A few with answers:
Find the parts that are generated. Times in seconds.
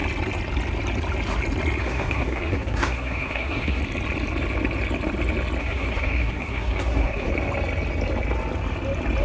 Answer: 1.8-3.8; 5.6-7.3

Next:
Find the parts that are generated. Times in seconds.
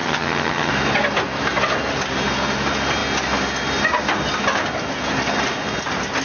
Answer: 0.0-0.7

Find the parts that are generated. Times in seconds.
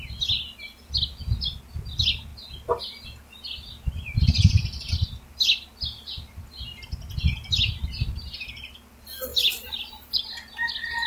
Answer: 9.3-10.2